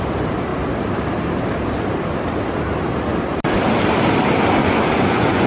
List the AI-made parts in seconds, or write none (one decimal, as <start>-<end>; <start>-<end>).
4.6-5.5